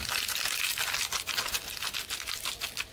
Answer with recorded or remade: recorded